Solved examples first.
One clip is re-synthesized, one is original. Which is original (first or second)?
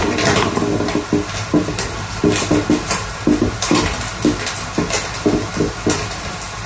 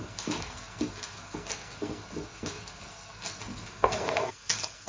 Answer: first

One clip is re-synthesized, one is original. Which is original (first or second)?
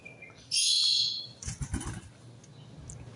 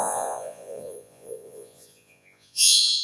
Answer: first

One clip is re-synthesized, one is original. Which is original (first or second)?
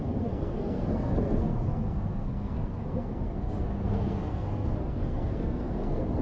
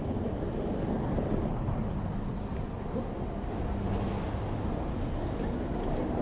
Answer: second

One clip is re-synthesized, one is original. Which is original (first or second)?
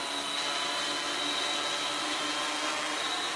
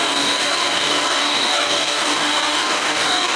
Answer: first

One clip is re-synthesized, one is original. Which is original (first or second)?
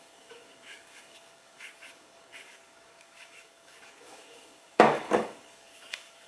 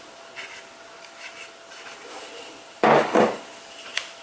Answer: second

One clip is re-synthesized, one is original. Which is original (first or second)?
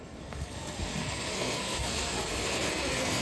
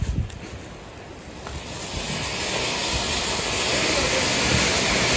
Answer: second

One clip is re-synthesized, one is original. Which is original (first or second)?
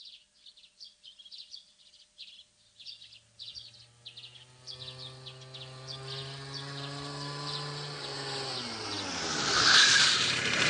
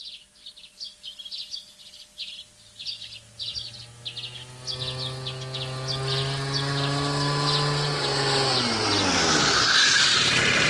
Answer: second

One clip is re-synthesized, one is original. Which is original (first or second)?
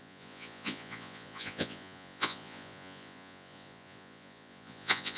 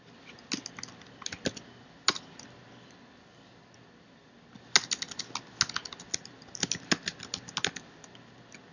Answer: second